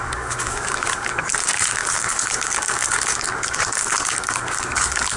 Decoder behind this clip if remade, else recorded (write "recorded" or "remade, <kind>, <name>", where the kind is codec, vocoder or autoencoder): remade, codec, DAC